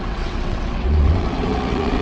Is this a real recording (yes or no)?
no